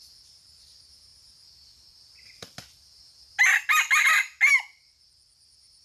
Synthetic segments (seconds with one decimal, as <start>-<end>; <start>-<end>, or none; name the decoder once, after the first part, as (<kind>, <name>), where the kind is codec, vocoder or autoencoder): none